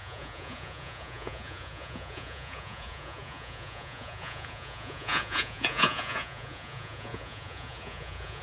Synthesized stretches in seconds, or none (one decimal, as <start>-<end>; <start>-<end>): 0.0-8.4

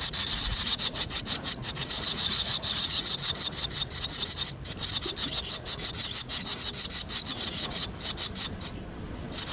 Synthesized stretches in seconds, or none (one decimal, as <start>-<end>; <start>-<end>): 0.0-3.2; 5.5-6.5; 7.3-7.8

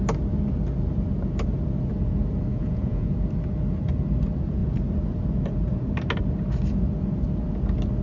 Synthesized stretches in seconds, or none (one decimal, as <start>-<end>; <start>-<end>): 2.5-3.1

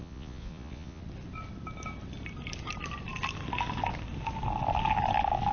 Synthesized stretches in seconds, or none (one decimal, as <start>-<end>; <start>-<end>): 0.0-1.0

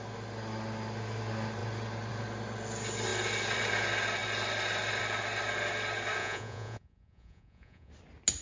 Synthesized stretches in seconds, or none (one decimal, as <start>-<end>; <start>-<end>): 6.2-7.9

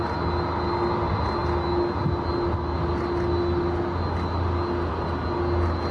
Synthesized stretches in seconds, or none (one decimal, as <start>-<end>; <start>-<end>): none

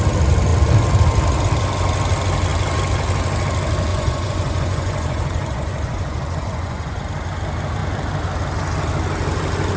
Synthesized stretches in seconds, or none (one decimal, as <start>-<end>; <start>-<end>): 3.9-7.0